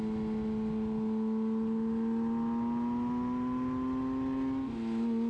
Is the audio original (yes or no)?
yes